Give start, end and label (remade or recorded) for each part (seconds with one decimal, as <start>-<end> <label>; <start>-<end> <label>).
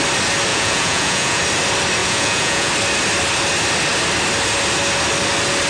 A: 0.0-0.5 recorded; 0.5-1.4 remade; 1.4-2.0 recorded; 2.0-2.7 remade; 2.7-5.7 recorded